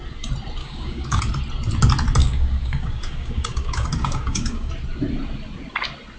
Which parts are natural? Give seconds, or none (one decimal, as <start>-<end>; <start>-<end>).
0.0-0.6; 1.2-2.2; 4.7-6.2

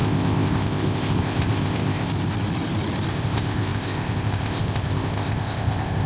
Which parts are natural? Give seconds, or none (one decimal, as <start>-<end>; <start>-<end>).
2.1-3.1

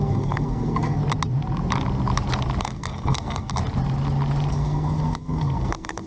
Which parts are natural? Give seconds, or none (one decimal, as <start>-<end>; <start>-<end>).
1.0-2.6; 3.6-4.5